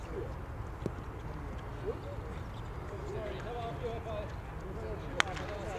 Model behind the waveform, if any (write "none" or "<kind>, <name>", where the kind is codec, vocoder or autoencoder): none